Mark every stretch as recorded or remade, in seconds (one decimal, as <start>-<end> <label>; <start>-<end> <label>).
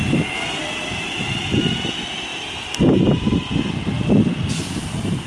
0.0-0.6 recorded; 0.6-1.4 remade; 1.4-5.3 recorded